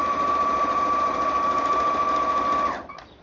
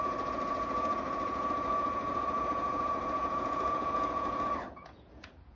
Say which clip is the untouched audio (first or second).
first